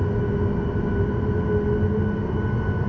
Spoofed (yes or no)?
no